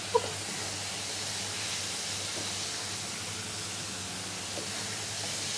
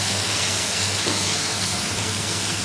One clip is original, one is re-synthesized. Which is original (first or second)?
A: first